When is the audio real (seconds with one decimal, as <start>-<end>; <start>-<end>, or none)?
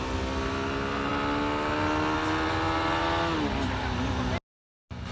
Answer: 0.0-5.1